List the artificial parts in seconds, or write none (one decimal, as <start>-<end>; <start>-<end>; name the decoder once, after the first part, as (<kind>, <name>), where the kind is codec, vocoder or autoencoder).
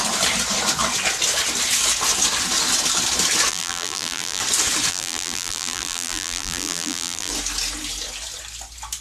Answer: 3.5-4.4 (vocoder, BigVGAN v2); 4.9-7.3